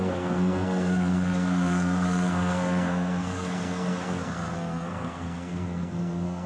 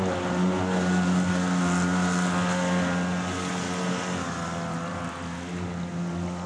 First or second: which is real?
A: second